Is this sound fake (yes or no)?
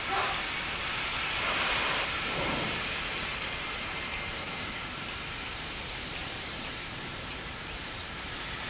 yes